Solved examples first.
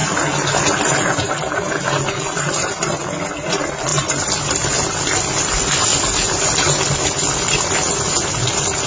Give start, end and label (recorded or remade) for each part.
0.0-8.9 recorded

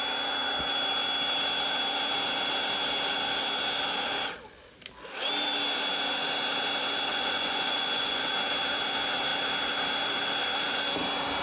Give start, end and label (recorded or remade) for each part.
0.0-7.1 recorded; 7.1-8.3 remade; 8.3-11.4 recorded

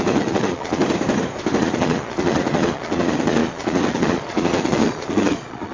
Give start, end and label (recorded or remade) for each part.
0.0-0.8 remade; 0.8-1.6 recorded; 1.6-5.7 remade

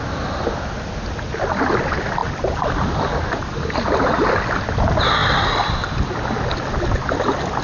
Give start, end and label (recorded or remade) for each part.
0.0-7.6 recorded

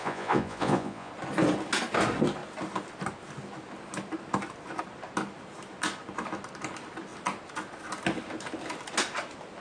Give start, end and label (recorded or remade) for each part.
0.0-1.1 remade; 1.1-9.6 recorded

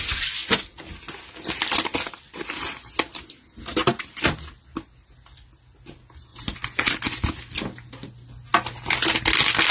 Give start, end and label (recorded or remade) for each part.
0.0-6.3 recorded; 6.3-6.8 remade; 6.8-9.7 recorded